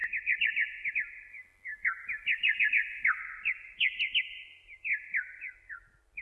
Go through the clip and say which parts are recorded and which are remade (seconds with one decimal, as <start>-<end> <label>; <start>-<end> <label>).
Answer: 0.0-6.2 recorded